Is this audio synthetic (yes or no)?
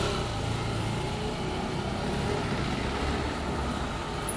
no